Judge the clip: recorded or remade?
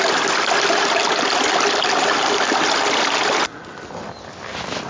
recorded